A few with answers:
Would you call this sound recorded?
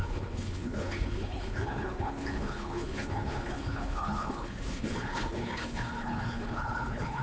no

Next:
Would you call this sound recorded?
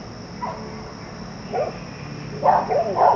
yes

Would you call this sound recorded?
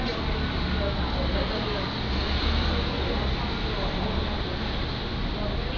yes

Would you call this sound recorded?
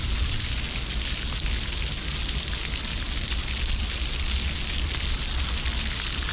yes